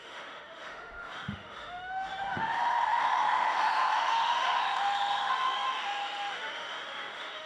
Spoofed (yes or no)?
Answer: yes